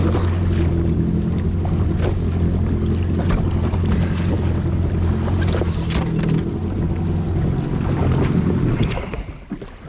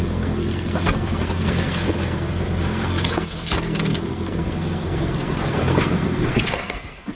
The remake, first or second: second